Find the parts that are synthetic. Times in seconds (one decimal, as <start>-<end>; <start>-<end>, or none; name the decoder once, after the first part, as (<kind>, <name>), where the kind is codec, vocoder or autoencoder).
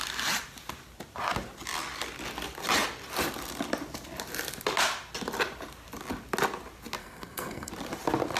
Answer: 7.0-7.7 (codec, SNAC)